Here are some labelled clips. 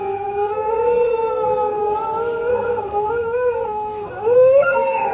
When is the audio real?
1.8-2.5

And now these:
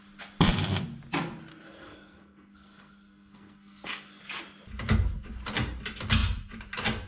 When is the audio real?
0.0-1.5; 4.2-7.1

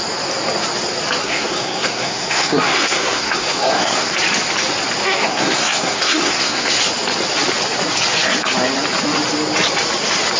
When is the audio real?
0.0-1.2; 4.1-5.2; 6.8-10.4

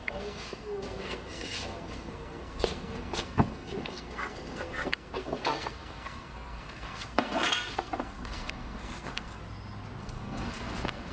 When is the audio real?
9.4-10.0